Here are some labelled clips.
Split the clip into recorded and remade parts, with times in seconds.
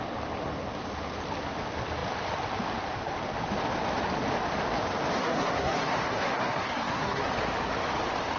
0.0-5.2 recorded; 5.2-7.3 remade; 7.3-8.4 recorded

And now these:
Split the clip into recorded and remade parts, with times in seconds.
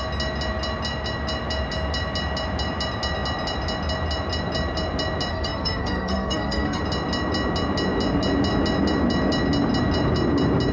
0.0-5.3 recorded; 5.3-6.8 remade; 6.8-10.7 recorded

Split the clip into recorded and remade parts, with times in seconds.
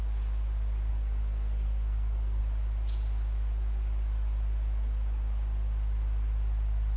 0.0-0.9 recorded; 0.9-2.4 remade; 2.4-7.0 recorded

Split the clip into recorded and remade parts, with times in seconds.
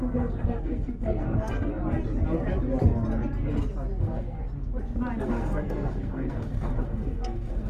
0.0-1.8 remade; 1.8-4.0 recorded; 4.0-4.4 remade; 4.4-5.2 recorded; 5.2-7.7 remade